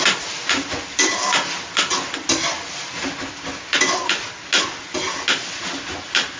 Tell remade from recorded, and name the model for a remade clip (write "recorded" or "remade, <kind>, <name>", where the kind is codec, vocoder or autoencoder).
recorded